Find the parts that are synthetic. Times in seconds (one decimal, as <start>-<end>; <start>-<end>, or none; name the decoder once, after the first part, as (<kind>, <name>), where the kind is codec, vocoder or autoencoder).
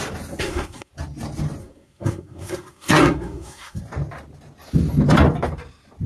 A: 0.4-0.9 (codec, SNAC); 1.6-3.8